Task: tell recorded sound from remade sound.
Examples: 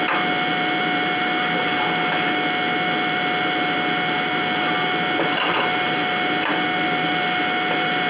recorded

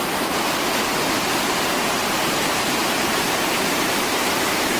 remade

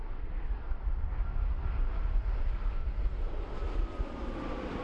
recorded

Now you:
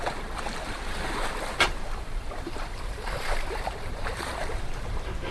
remade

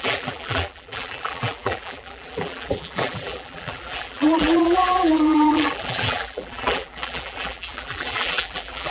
remade